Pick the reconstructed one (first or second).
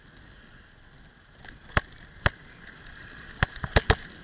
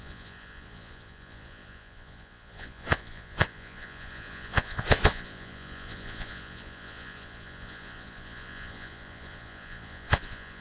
second